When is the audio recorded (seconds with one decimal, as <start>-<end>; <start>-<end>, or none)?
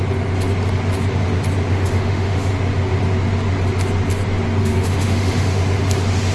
0.0-1.7; 2.5-4.6; 5.6-6.3